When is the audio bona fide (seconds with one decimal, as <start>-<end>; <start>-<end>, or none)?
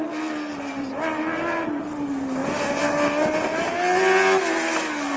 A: 0.0-0.5; 1.8-2.4; 3.7-5.2